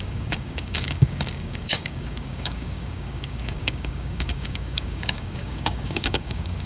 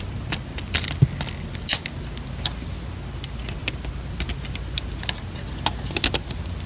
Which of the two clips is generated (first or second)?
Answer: first